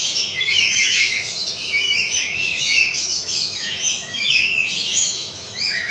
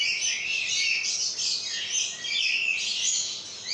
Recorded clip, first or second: second